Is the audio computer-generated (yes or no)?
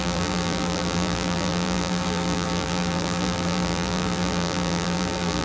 yes